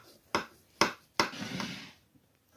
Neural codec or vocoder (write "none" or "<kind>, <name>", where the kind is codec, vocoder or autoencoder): none